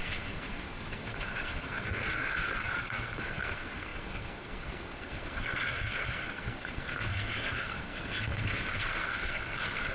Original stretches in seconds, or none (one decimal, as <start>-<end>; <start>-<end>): none